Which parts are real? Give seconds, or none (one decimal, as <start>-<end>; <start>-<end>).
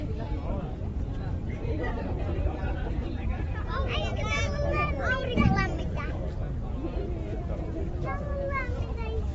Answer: 0.0-0.9; 3.1-5.0; 5.9-9.3